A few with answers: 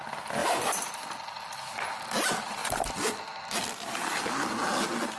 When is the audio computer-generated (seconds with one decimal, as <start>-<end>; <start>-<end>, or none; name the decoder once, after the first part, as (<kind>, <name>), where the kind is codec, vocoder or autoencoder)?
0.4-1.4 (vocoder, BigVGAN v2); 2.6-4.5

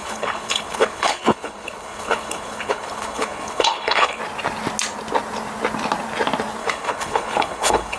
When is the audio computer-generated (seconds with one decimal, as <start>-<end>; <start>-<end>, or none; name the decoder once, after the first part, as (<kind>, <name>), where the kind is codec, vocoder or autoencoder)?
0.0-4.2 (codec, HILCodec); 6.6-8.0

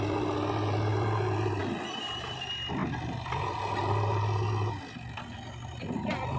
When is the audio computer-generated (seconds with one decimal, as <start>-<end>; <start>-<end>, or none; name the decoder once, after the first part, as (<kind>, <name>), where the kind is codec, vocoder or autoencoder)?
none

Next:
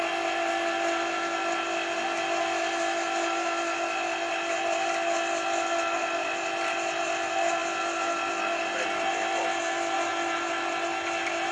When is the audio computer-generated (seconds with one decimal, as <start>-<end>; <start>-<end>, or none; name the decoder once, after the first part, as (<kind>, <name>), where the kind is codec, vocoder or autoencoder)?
none

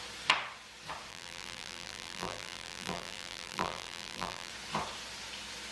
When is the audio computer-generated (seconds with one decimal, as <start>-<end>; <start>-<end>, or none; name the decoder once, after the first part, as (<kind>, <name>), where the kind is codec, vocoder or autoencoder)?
1.1-4.5 (vocoder, BigVGAN v2)

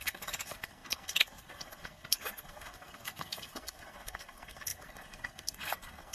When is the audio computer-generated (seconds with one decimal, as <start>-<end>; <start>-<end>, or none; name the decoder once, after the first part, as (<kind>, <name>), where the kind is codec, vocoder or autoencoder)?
0.0-6.1 (codec, SNAC)